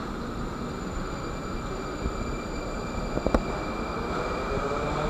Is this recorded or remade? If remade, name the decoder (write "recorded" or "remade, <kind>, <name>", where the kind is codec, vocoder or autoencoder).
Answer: recorded